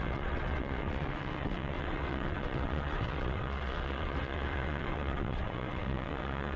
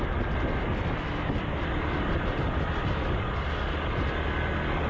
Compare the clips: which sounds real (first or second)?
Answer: second